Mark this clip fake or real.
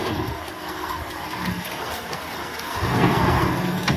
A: fake